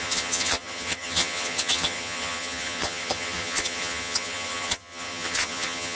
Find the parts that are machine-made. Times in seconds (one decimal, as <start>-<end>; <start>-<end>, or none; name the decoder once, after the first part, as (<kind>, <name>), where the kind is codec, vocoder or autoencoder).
0.0-6.0 (vocoder, HiFi-GAN)